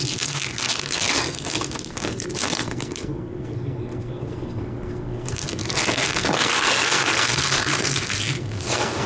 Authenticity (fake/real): fake